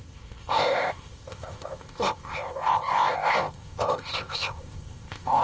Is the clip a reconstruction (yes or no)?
yes